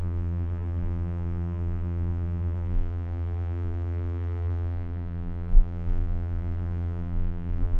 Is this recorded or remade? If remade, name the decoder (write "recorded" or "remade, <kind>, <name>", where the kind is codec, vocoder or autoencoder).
remade, vocoder, BigVGAN v2